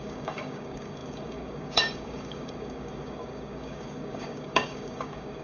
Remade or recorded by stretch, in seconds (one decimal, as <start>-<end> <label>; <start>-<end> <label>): 0.0-5.4 remade